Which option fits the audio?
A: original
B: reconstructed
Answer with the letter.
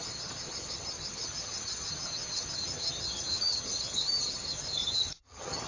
B